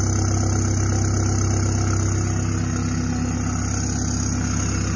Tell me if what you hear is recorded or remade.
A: recorded